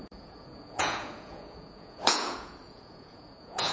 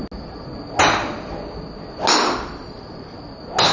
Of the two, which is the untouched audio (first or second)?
second